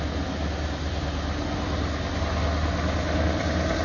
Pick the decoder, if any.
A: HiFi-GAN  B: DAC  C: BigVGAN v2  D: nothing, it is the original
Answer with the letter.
D